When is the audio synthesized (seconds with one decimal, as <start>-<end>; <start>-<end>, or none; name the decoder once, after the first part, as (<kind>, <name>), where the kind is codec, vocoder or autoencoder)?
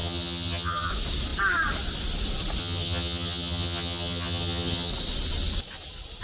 0.0-0.9 (vocoder, HiFi-GAN); 2.6-4.9